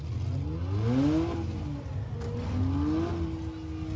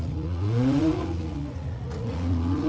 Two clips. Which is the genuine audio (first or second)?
first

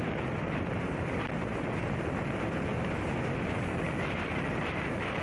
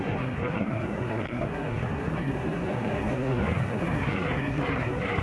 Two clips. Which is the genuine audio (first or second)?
first